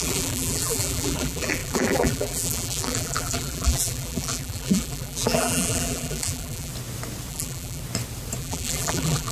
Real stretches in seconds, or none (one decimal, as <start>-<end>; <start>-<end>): 6.7-7.3; 7.8-8.4